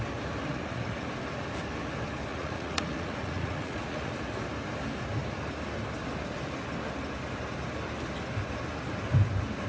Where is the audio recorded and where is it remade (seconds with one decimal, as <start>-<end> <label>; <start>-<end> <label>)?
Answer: 0.0-0.5 recorded; 0.5-1.1 remade; 1.1-2.3 recorded; 2.3-4.1 remade; 4.1-9.7 recorded